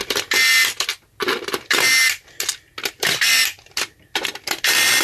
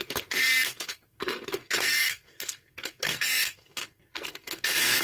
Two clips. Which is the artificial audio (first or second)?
second